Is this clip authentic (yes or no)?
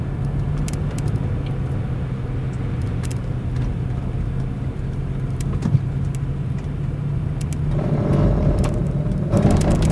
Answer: yes